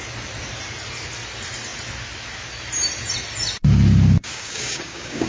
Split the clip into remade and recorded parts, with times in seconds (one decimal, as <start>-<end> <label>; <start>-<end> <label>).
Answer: 0.0-4.3 recorded; 4.3-5.3 remade